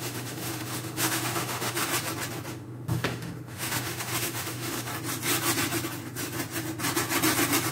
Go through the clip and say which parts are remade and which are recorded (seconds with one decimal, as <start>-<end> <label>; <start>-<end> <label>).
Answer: 0.0-1.9 remade; 1.9-2.5 recorded; 2.5-4.9 remade; 4.9-7.7 recorded